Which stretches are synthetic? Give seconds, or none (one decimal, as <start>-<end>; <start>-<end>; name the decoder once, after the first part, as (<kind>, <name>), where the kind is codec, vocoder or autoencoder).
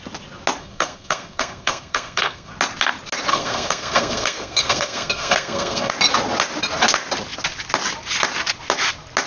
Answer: 0.6-2.5 (codec, SNAC); 3.3-5.9